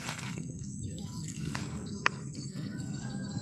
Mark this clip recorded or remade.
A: remade